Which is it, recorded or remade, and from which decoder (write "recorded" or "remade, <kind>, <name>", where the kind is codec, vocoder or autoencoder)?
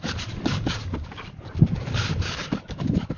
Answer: remade, codec, DAC